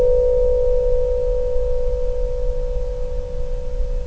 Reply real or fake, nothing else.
real